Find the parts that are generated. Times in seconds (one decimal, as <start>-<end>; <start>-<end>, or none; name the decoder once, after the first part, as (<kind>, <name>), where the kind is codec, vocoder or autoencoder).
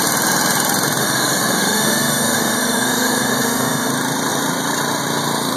1.0-3.9 (autoencoder, DAC-VAE)